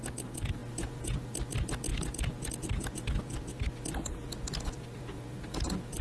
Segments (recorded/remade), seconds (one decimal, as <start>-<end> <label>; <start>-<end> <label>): 0.0-6.0 recorded

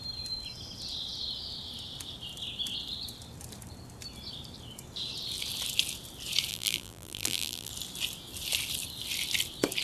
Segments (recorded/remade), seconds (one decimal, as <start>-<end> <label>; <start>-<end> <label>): 0.0-6.5 recorded; 6.5-7.7 remade; 7.7-9.8 recorded